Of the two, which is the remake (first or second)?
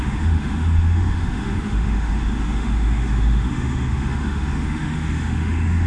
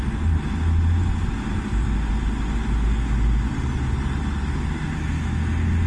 first